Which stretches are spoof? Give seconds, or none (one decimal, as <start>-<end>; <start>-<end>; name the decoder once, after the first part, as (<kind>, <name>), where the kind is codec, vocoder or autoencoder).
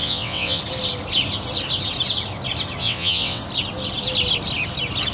0.0-0.6 (vocoder, WaveNeXt); 2.8-3.4